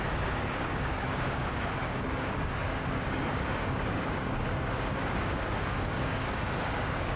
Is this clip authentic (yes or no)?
no